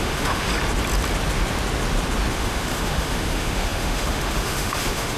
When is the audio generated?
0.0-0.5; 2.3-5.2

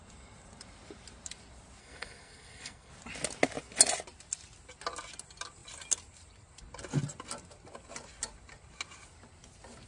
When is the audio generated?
1.8-2.9

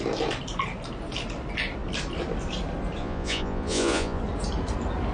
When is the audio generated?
3.0-4.2

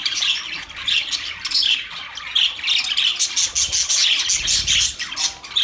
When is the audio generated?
0.0-2.0

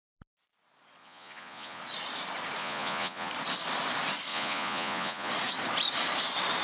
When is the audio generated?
1.0-1.8; 2.6-3.3; 4.3-5.3

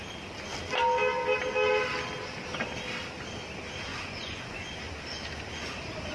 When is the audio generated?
3.9-4.7

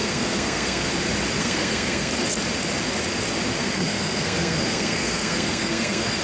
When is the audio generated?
0.0-0.9; 1.4-2.1; 3.6-6.2

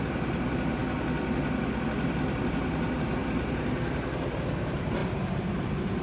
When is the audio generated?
0.0-0.8; 2.5-6.0